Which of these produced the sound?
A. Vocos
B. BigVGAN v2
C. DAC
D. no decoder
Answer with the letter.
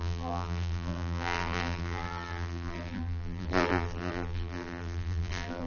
B